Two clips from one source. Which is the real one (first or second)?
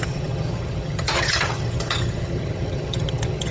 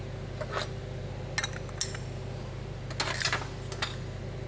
second